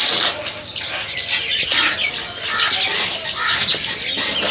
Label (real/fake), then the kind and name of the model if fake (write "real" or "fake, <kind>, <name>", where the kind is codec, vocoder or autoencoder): real